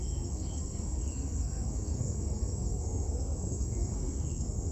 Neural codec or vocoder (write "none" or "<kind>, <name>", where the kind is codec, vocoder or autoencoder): codec, SNAC